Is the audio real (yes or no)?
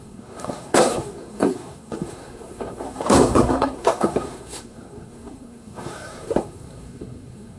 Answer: no